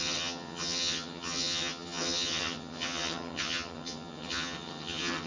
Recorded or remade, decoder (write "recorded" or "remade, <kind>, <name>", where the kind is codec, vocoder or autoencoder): remade, vocoder, HiFi-GAN